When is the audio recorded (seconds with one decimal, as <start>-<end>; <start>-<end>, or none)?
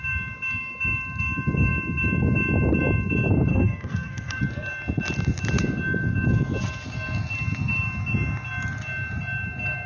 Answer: 0.0-3.5; 4.4-9.9